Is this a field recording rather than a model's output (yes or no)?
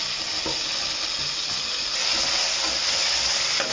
yes